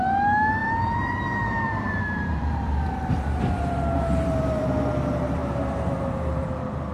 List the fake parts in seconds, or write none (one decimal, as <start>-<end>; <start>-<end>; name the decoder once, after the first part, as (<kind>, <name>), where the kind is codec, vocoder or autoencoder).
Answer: 0.6-4.7 (vocoder, BigVGAN v2); 5.4-6.5